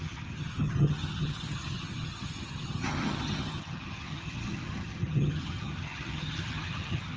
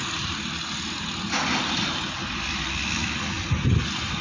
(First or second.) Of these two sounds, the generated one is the first